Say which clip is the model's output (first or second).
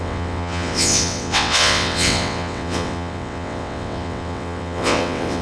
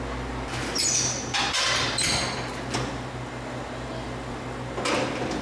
first